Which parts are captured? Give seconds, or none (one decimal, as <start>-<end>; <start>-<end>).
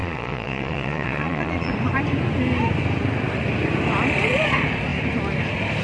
1.7-5.8